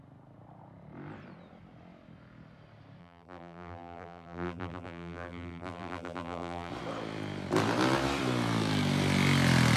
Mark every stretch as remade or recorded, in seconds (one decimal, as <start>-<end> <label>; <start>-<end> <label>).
0.0-3.0 recorded; 3.0-6.7 remade; 6.7-9.8 recorded